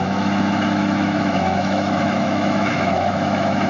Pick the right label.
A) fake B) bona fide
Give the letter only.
A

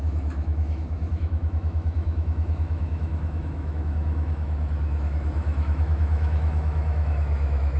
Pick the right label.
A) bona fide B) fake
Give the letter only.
B